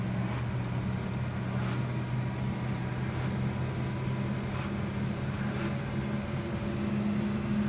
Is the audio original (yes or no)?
yes